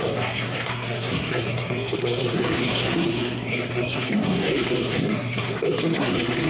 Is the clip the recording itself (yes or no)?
no